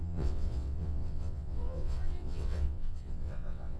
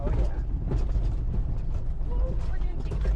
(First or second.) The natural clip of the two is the second